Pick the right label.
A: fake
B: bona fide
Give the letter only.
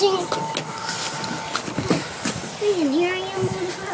B